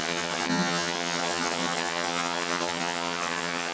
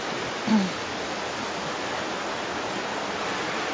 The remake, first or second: first